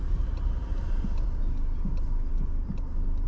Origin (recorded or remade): remade